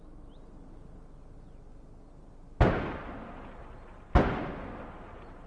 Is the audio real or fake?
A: real